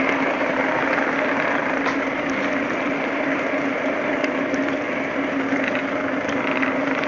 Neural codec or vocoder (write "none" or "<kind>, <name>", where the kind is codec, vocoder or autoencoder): none